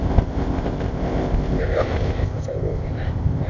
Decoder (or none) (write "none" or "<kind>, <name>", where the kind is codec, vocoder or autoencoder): codec, ZipCodec